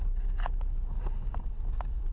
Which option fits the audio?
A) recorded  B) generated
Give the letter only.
A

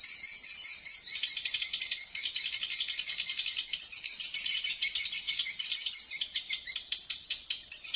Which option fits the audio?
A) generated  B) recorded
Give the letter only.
B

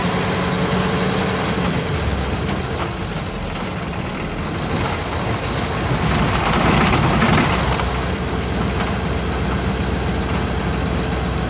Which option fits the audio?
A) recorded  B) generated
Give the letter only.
A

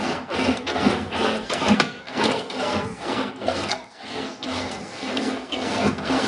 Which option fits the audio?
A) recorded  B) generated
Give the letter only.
B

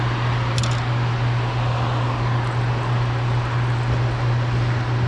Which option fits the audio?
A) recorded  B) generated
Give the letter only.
A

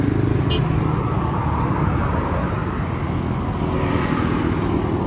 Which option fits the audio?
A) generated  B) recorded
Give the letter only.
B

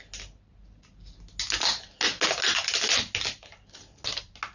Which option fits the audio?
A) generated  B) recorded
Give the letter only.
B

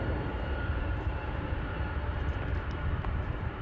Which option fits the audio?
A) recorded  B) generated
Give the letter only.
B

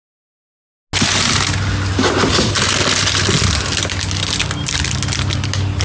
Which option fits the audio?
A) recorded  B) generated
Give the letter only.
A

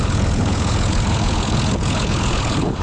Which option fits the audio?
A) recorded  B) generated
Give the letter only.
B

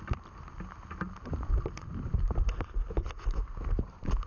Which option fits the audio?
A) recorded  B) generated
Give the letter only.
A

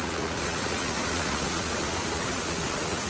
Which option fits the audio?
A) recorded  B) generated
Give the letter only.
B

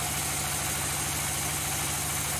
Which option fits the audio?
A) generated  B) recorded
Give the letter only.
B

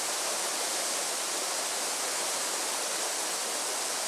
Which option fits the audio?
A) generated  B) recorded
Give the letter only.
B